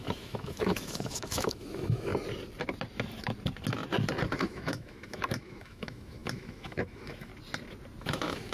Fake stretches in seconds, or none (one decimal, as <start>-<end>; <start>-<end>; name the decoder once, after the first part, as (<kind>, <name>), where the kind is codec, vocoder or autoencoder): 0.0-2.1 (autoencoder, DAC-VAE); 4.4-7.3; 8.0-8.5